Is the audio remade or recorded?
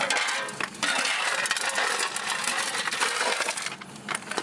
recorded